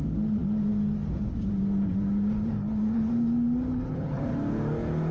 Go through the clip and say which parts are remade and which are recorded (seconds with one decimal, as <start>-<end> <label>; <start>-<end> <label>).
0.0-2.6 recorded; 2.6-3.1 remade; 3.1-3.7 recorded; 3.7-4.3 remade; 4.3-5.1 recorded